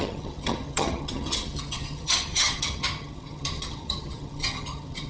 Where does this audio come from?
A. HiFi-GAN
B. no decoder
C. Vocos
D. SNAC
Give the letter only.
A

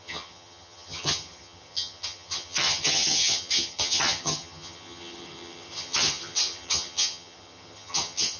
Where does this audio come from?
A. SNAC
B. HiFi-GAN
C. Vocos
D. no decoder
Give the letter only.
B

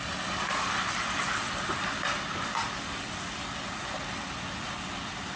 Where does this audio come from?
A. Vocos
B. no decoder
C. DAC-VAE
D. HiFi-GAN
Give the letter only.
B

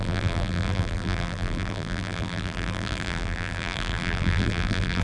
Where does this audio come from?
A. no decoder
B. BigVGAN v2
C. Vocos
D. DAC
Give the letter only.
B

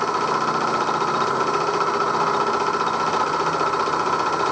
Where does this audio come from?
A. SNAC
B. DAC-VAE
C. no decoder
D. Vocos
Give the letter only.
C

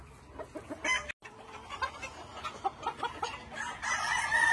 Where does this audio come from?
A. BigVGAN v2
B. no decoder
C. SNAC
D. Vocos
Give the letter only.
B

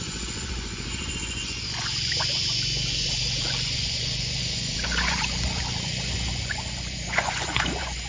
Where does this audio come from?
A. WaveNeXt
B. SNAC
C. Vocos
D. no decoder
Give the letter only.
C